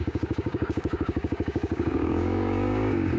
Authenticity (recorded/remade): remade